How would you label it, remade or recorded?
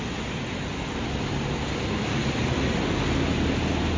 recorded